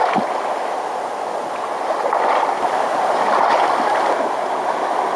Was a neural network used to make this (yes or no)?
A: no